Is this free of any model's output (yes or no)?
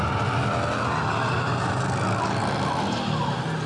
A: yes